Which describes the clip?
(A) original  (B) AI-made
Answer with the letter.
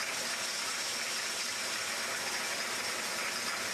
A